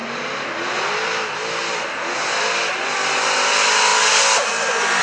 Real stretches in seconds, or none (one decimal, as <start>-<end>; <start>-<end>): 0.0-5.0